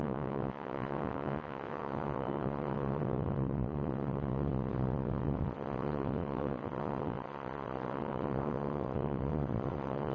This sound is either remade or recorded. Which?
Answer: remade